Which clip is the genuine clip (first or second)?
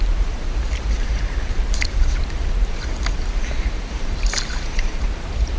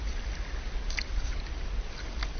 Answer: second